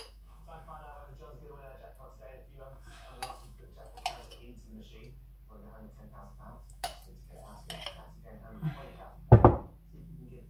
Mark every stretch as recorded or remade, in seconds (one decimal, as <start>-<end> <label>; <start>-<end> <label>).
0.0-1.0 remade; 1.0-2.6 recorded; 2.6-3.7 remade; 3.7-6.1 recorded; 6.1-6.9 remade; 6.9-10.0 recorded; 10.0-10.5 remade